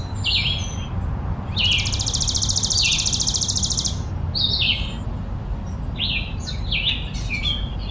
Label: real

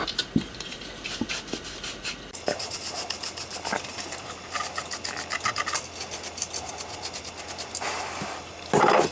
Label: real